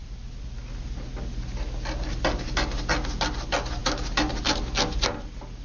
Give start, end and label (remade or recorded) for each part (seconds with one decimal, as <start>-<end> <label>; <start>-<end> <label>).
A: 0.0-5.6 recorded